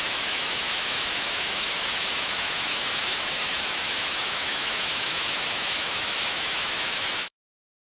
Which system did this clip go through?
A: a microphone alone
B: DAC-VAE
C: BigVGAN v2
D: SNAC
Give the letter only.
B